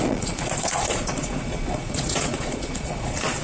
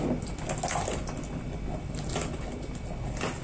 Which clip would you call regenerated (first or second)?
first